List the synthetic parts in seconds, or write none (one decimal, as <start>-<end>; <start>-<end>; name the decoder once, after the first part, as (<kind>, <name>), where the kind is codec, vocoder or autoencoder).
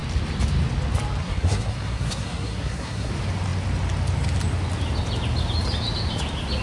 1.2-3.1 (codec, SNAC)